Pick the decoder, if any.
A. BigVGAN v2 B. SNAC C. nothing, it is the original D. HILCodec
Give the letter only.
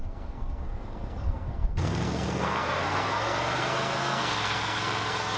B